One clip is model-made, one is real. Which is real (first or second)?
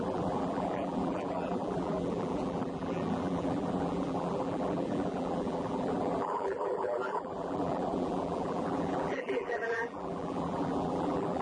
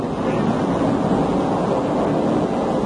second